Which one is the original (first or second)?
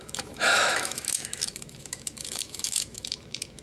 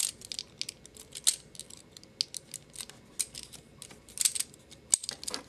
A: second